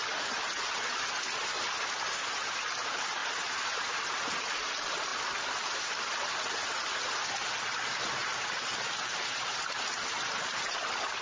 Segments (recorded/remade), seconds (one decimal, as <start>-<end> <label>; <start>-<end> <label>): 0.0-11.2 recorded